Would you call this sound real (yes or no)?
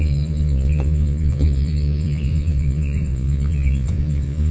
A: no